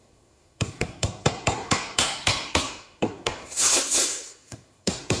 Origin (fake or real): fake